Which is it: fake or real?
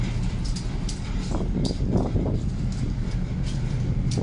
real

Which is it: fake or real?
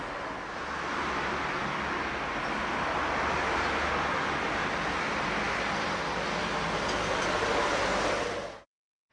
real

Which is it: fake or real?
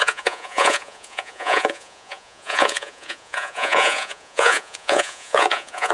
fake